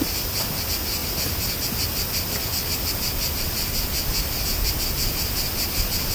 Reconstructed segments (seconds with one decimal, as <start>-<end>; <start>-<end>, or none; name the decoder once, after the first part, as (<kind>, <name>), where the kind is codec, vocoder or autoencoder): none